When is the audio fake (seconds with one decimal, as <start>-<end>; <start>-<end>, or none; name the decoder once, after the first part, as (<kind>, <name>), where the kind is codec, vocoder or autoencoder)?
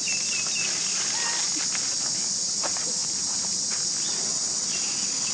none